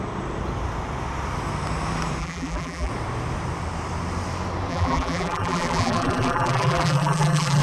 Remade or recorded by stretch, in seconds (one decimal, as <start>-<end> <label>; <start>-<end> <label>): 0.0-2.2 recorded; 2.2-2.9 remade; 2.9-4.7 recorded; 4.7-7.6 remade